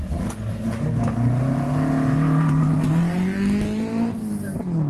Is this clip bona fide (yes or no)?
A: yes